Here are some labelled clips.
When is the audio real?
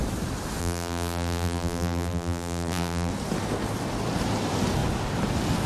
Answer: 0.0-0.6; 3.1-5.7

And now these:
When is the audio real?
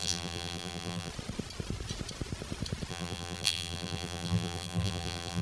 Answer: 1.1-2.9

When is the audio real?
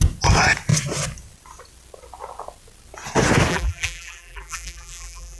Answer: 0.0-3.5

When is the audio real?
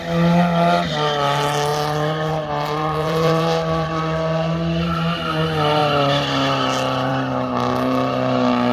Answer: 0.0-1.7; 4.0-8.7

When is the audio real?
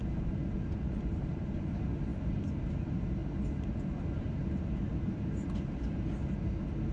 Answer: 3.2-4.2; 6.2-6.9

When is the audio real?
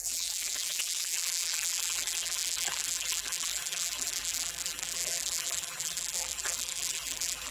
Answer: none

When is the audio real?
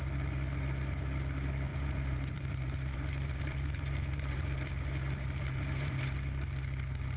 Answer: 0.0-1.7; 6.0-7.2